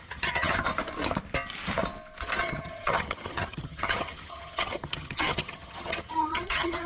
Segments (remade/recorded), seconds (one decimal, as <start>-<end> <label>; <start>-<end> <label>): 0.0-0.7 remade; 0.7-2.4 recorded; 2.4-6.9 remade